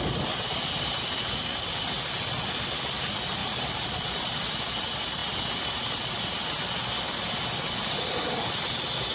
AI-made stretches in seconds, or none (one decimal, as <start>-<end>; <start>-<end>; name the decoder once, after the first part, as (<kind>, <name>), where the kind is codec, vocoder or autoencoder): 3.4-4.2 (vocoder, BigVGAN v2)